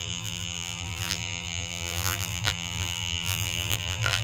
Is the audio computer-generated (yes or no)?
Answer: yes